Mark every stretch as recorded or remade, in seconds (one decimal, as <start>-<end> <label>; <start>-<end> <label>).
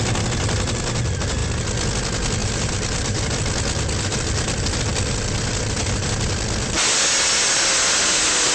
0.0-2.4 recorded; 2.4-3.2 remade; 3.2-8.5 recorded